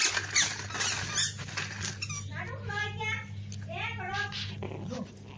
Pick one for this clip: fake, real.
real